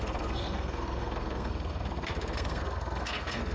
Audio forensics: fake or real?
fake